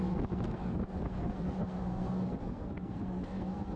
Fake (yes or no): yes